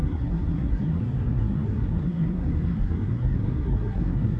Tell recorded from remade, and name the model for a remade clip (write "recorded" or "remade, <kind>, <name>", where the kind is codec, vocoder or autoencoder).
remade, codec, SNAC